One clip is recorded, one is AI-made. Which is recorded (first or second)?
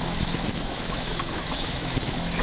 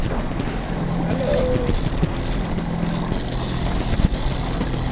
second